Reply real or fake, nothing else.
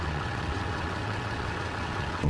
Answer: fake